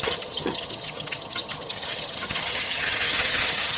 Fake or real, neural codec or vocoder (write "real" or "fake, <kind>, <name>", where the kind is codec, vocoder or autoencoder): fake, vocoder, HiFi-GAN